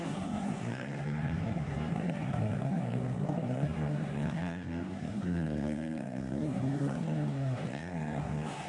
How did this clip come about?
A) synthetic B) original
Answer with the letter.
A